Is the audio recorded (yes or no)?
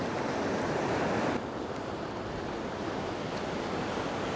yes